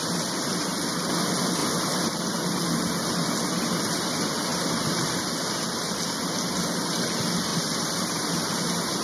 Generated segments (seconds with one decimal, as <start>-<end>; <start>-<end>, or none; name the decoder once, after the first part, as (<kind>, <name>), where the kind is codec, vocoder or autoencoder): 1.6-2.3 (vocoder, BigVGAN v2); 7.5-8.1